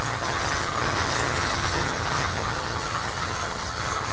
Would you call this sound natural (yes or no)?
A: no